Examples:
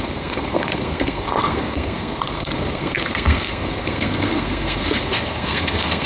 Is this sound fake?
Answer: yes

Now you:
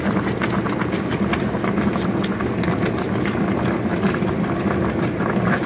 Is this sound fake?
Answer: no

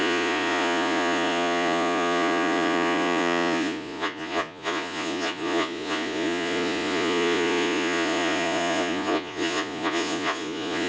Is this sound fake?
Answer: yes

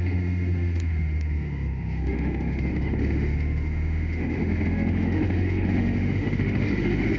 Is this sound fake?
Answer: yes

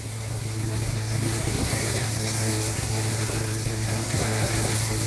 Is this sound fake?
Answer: yes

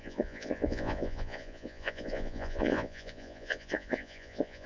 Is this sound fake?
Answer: yes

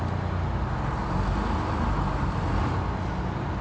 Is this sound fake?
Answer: no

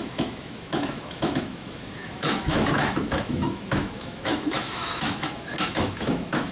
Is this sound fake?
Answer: yes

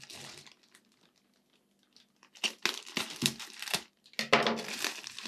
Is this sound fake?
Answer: no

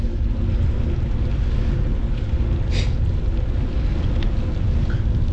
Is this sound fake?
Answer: no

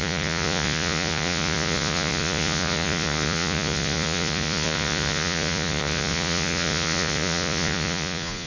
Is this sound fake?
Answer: yes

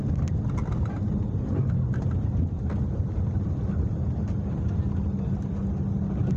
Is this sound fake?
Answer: no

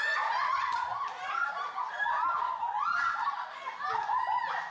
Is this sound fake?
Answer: no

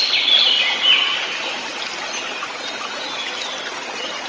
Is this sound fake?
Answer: no